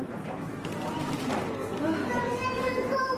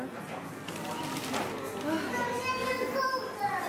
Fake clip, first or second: first